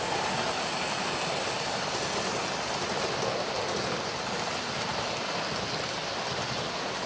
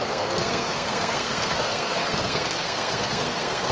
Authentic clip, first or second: first